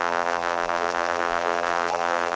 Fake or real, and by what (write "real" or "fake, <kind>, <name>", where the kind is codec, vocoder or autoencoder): fake, vocoder, BigVGAN v2